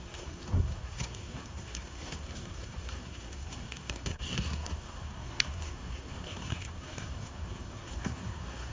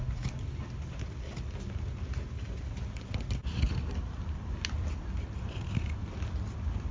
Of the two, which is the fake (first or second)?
first